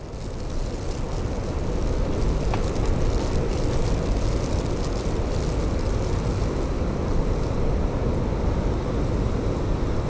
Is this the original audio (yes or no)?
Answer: yes